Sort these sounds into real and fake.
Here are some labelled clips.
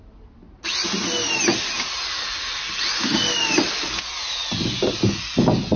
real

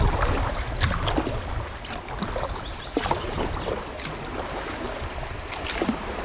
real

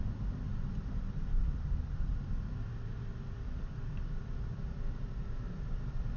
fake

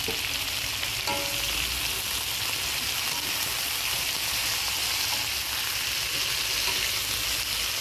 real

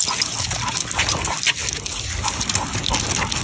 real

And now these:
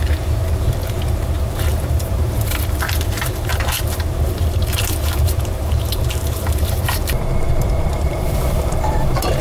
fake